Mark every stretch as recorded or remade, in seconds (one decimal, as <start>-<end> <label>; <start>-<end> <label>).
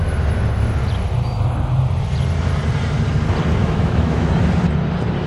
0.0-3.6 recorded; 3.6-4.3 remade; 4.3-5.3 recorded